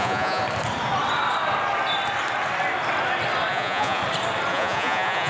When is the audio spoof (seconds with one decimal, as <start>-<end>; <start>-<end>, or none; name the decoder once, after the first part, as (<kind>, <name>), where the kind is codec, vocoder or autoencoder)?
0.0-0.4 (vocoder, Vocos); 3.5-4.0; 4.5-5.3